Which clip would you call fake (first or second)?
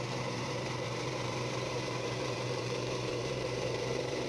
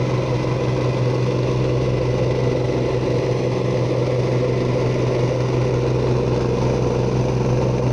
first